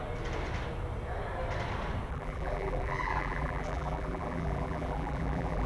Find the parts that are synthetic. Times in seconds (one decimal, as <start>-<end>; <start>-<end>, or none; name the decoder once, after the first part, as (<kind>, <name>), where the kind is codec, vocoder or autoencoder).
2.1-5.7 (vocoder, BigVGAN v2)